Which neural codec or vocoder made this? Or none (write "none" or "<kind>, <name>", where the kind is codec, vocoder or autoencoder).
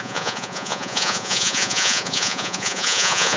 vocoder, Vocos